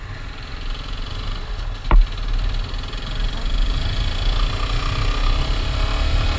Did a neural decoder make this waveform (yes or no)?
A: no